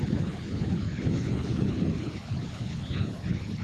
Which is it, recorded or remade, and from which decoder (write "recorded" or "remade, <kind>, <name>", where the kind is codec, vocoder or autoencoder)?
remade, codec, HILCodec